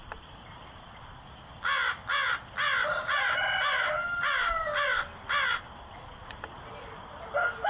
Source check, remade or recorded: recorded